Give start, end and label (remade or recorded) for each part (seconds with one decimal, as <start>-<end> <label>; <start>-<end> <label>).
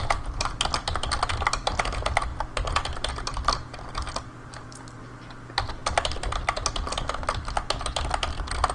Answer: 0.0-8.7 recorded